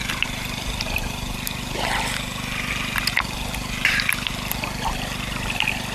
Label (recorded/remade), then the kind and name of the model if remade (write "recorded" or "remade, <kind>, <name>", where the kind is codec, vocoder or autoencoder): recorded